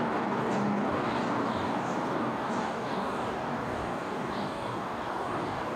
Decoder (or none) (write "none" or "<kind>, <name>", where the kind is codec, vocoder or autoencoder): codec, DAC